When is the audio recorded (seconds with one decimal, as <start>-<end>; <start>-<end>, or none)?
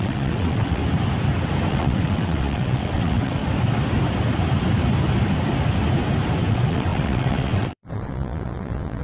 0.8-1.7; 3.4-6.5